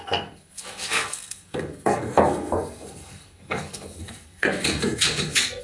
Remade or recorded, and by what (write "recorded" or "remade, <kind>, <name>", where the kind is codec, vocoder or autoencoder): remade, codec, SNAC